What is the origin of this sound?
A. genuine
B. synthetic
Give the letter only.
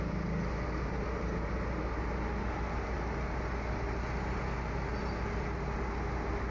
A